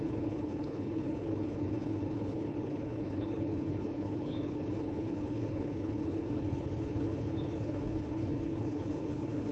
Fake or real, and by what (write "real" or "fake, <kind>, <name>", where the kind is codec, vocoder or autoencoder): fake, codec, HILCodec